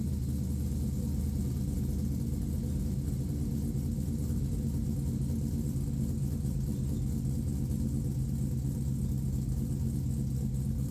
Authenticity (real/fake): real